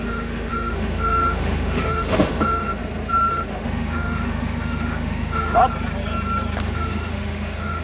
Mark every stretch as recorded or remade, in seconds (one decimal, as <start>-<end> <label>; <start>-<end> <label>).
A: 0.0-2.8 remade; 2.8-3.3 recorded; 3.3-5.6 remade; 5.6-6.6 recorded; 6.6-7.8 remade